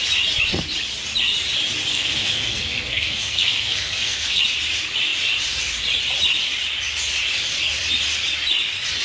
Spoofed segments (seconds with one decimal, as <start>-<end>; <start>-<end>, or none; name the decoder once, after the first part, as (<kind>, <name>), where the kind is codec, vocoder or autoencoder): 1.9-4.4 (codec, SNAC)